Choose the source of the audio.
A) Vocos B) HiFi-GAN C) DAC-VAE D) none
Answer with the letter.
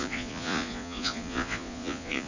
A